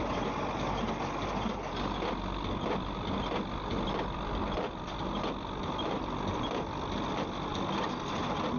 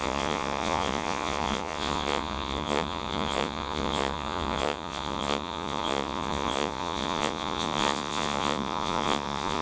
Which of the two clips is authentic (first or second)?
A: first